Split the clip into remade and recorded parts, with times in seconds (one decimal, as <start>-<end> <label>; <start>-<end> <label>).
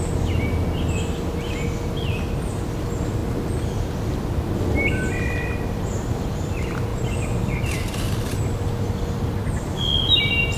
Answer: 0.0-6.9 recorded; 6.9-8.0 remade; 8.0-10.6 recorded